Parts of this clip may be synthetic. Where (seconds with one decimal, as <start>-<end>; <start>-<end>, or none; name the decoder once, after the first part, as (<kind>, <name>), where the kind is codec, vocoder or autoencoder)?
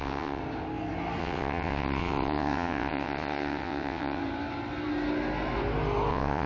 0.0-0.4 (vocoder, WaveNeXt); 1.2-4.2; 6.1-6.5